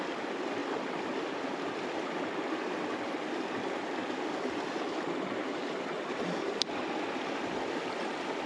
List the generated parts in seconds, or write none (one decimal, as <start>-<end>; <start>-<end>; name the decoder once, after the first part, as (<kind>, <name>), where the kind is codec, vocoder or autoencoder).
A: none